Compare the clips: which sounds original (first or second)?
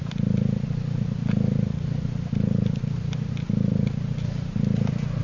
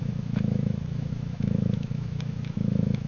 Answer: first